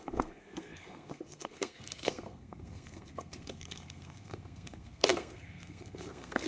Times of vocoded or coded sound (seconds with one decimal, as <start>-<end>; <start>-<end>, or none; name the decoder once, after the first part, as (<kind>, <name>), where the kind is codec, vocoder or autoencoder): 0.0-6.5 (codec, SNAC)